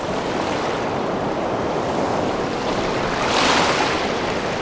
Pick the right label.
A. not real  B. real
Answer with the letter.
B